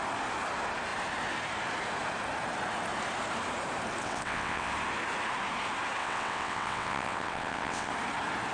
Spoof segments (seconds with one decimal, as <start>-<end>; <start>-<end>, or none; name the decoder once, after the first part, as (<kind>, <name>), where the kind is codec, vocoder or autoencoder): 4.0-4.7 (vocoder, WaveNeXt); 6.0-7.9